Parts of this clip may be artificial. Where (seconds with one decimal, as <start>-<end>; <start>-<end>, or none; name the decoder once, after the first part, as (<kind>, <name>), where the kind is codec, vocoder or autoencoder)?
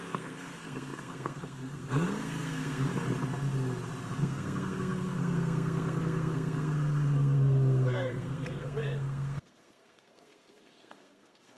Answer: 0.0-2.9 (codec, SNAC); 4.2-11.6